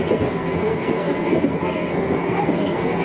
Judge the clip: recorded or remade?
remade